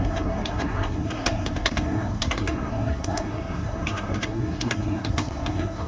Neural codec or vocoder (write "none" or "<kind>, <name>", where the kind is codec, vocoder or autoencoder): codec, SNAC